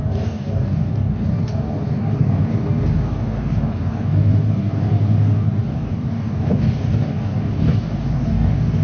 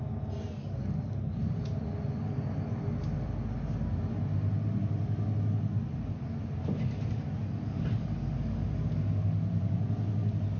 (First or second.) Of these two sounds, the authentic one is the second